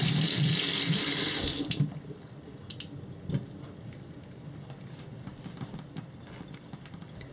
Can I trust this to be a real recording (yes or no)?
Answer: no